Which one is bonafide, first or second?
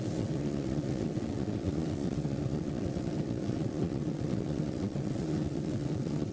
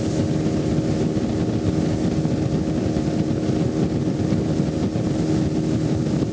second